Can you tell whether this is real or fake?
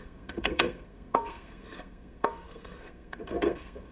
fake